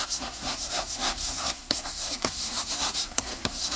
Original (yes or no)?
no